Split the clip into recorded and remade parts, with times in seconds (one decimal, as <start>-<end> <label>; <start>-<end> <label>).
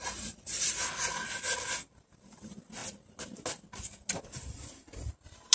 0.0-5.5 recorded